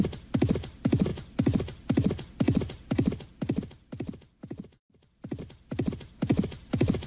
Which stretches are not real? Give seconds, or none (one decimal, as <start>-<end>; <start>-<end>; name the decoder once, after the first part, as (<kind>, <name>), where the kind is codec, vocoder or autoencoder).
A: 6.3-7.1 (vocoder, BigVGAN v2)